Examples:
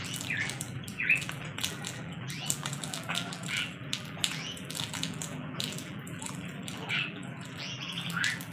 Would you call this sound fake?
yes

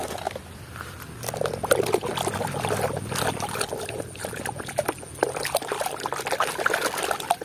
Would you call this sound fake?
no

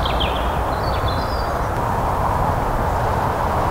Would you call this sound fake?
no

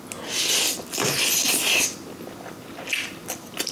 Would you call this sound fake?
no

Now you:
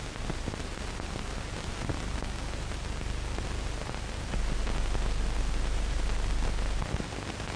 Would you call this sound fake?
no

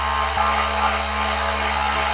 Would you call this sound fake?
no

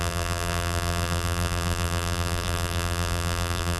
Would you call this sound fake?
yes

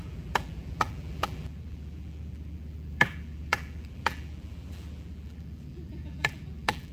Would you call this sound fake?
yes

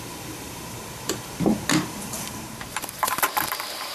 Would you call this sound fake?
yes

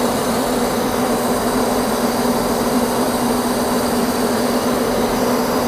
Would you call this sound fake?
yes